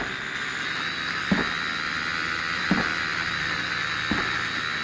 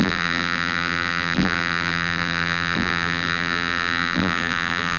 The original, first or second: first